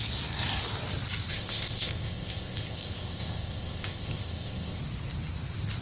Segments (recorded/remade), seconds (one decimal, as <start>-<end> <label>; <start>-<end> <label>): 0.0-1.3 recorded; 1.3-4.8 remade; 4.8-5.8 recorded